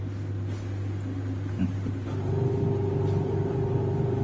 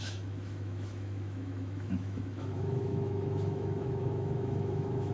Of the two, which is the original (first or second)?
first